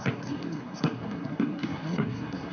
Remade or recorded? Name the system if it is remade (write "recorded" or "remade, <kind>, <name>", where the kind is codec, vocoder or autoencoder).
remade, codec, SNAC